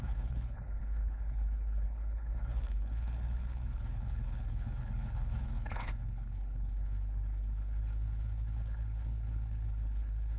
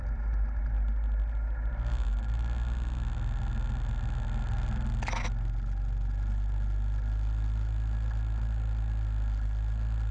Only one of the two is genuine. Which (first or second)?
second